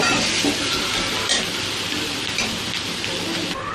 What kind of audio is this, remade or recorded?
recorded